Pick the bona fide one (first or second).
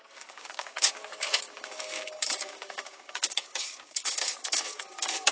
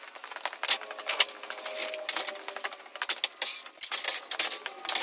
second